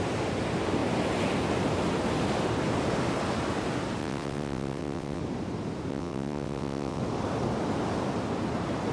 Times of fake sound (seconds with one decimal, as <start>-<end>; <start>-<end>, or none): 4.0-5.2; 5.9-7.0